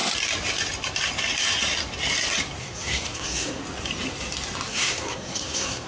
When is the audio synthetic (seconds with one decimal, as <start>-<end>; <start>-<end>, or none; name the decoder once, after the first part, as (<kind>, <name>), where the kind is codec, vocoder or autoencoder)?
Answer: 2.6-3.6 (codec, SNAC); 4.7-5.9